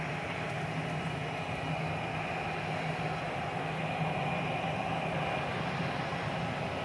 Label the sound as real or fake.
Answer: real